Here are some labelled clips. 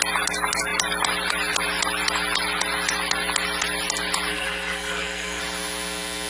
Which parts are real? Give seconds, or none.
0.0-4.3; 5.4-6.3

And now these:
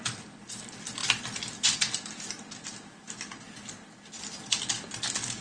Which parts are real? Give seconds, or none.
0.0-5.4

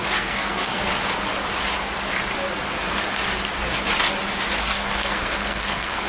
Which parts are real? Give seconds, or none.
0.9-4.6